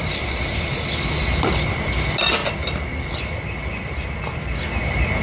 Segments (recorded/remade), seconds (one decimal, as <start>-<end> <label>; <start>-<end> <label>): 0.0-1.1 remade; 1.1-5.2 recorded